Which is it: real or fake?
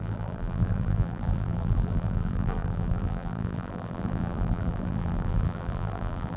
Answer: fake